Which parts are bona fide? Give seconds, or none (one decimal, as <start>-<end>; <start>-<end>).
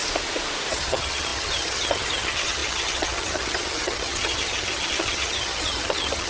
0.0-0.7